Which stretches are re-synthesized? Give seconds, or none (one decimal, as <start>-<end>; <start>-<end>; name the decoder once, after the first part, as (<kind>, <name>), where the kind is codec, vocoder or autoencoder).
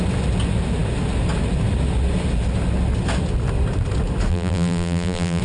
4.3-5.4 (vocoder, BigVGAN v2)